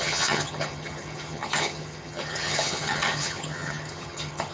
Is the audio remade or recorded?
remade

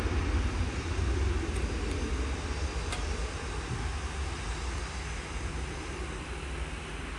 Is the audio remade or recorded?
recorded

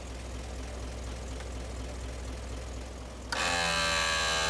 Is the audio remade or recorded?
recorded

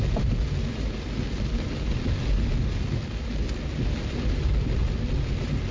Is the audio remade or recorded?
recorded